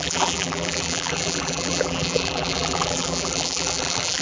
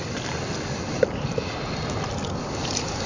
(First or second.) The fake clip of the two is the first